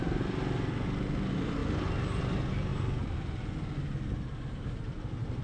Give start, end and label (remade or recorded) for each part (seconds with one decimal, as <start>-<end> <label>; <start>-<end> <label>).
0.0-5.4 recorded